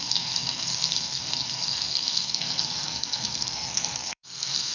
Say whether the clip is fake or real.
fake